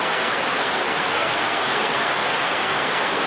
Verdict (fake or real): fake